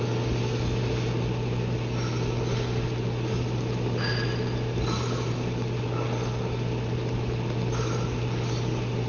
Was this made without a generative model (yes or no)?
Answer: yes